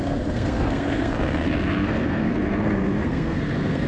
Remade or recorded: remade